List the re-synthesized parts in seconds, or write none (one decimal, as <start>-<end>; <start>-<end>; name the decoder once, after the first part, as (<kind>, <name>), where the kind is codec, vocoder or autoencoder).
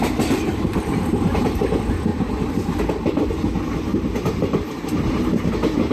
0.5-1.7 (vocoder, BigVGAN v2); 3.9-5.5